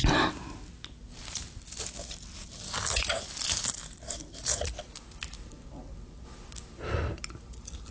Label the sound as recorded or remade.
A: recorded